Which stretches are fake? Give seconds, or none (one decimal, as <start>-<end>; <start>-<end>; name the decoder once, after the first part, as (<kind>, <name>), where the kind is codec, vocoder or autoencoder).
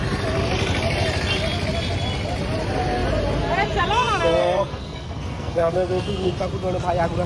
4.4-6.3 (codec, SNAC)